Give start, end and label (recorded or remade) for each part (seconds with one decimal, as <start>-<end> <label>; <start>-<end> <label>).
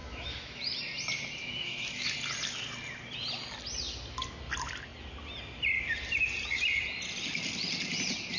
0.0-0.6 remade; 0.6-1.4 recorded; 1.4-2.1 remade; 2.1-8.4 recorded